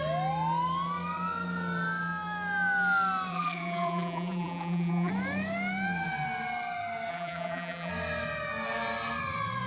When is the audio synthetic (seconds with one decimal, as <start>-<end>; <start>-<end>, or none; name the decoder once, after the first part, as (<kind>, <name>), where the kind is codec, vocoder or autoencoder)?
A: 3.3-5.1 (vocoder, BigVGAN v2); 7.1-7.9